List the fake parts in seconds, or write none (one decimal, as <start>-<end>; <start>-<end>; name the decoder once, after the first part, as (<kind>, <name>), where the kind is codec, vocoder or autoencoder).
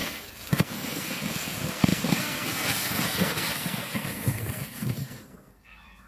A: 0.0-6.1 (codec, SNAC)